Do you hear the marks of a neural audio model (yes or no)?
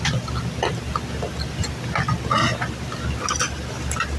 no